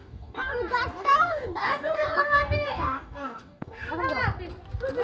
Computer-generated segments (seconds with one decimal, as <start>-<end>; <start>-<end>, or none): 0.0-0.5; 0.9-3.9